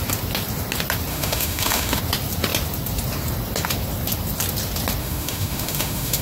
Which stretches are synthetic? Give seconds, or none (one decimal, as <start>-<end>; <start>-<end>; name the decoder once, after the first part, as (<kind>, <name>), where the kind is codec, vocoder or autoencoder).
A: 1.1-2.0 (autoencoder, DAC-VAE); 5.0-6.2